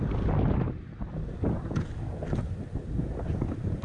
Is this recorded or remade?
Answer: recorded